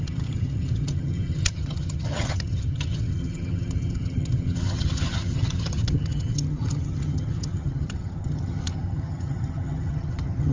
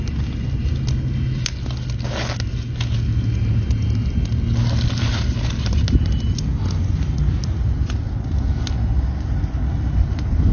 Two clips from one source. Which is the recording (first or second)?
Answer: second